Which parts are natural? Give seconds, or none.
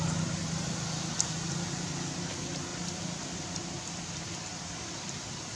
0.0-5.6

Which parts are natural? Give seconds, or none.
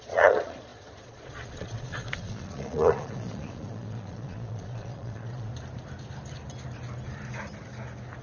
5.5-8.2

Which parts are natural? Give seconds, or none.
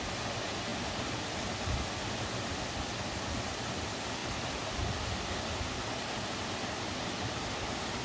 0.0-8.0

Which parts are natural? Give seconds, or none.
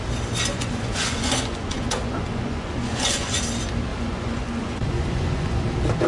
0.0-0.5; 3.4-3.9; 5.6-6.1